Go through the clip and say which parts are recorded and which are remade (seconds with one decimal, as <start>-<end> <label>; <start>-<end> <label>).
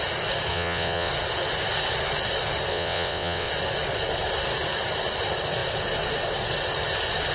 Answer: 0.0-0.5 recorded; 0.5-1.1 remade; 1.1-2.7 recorded; 2.7-3.5 remade; 3.5-7.3 recorded